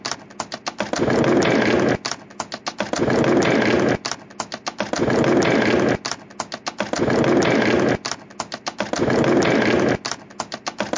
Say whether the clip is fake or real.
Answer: real